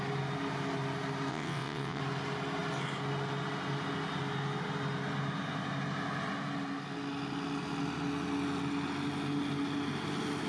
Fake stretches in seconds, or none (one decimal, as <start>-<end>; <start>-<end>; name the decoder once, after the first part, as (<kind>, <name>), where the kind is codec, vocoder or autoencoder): 1.3-2.0 (vocoder, WaveNeXt)